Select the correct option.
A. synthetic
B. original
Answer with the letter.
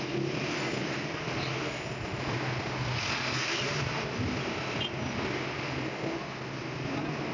B